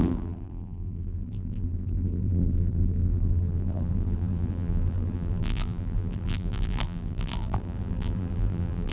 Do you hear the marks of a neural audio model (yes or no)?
yes